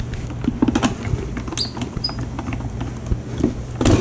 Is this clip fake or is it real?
real